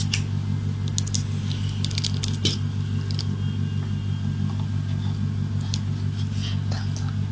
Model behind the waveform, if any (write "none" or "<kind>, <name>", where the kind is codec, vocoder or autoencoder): none